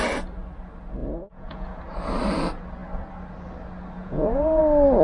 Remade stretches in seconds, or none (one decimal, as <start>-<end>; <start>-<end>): 1.0-1.8; 4.0-4.6